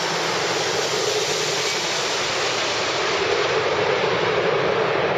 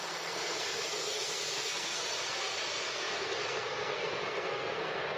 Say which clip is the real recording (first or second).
first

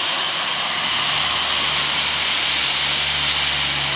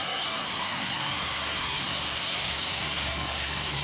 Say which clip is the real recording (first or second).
first